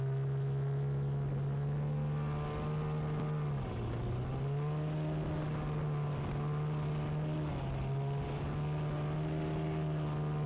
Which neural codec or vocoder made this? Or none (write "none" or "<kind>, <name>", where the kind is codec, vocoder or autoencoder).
none